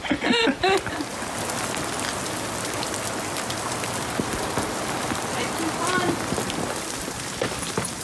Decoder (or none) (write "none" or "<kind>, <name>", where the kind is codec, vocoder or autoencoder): none